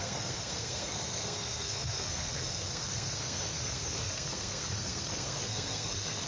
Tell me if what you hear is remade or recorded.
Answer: remade